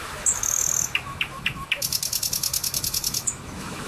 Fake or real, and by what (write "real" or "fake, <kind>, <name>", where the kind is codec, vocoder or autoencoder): fake, autoencoder, DAC-VAE